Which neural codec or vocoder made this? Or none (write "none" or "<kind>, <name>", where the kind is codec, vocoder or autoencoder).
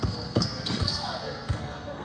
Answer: codec, SNAC